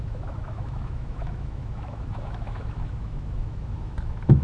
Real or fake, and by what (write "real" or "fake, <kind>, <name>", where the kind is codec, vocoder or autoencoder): fake, autoencoder, DAC-VAE